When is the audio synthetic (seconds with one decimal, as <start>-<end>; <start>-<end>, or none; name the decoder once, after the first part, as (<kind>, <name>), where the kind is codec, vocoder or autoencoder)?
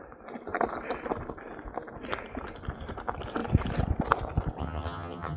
4.6-5.4 (vocoder, HiFi-GAN)